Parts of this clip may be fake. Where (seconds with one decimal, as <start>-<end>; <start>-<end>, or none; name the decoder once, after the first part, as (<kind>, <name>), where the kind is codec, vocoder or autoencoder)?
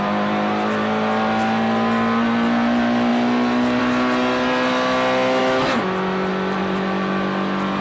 5.4-6.3 (autoencoder, DAC-VAE)